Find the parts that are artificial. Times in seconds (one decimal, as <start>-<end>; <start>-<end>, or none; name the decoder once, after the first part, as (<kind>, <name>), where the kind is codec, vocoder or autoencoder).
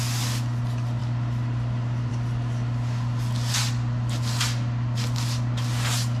none